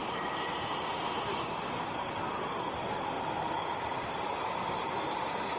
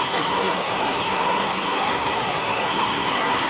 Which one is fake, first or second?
second